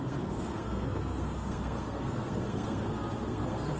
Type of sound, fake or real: fake